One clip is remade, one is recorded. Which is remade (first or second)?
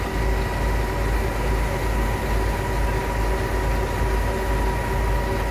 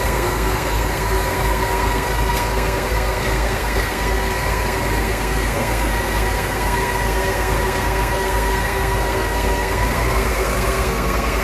second